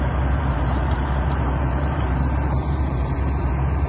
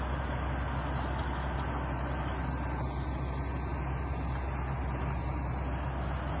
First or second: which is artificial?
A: first